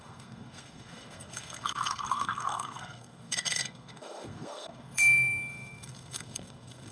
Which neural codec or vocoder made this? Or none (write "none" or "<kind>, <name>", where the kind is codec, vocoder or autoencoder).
codec, SNAC